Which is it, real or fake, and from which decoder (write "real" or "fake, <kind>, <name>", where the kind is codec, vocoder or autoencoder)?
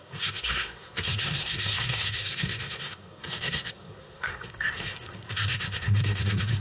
fake, codec, SNAC